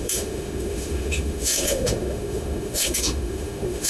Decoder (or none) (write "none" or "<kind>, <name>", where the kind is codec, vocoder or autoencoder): autoencoder, DAC-VAE